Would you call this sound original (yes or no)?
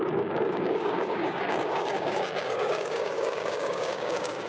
no